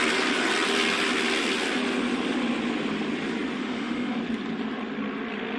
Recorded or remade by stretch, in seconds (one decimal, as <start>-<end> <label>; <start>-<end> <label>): 0.0-3.6 recorded; 3.6-4.2 remade; 4.2-5.6 recorded